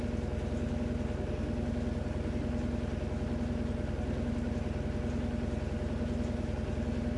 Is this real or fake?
real